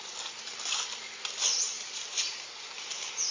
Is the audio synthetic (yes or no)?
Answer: no